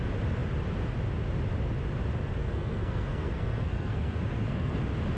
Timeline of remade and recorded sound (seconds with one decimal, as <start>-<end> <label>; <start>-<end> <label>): 0.0-2.4 recorded; 2.4-4.8 remade; 4.8-5.2 recorded